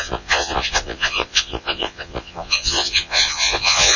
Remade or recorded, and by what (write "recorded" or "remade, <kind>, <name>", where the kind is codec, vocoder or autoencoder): remade, vocoder, Vocos